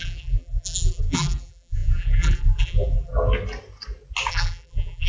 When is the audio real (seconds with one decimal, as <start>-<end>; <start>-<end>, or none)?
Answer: 3.1-4.3